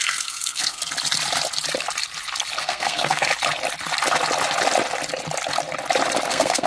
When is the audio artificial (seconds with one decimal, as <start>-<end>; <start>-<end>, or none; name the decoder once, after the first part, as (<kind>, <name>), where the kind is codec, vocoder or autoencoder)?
0.0-0.8 (codec, SNAC); 2.6-3.3; 6.3-6.7